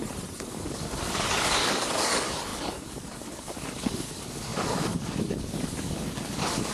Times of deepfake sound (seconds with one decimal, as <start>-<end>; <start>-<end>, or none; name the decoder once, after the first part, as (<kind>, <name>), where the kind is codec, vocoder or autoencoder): 0.5-6.7 (codec, DAC)